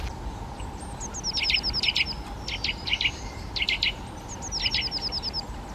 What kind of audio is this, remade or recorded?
recorded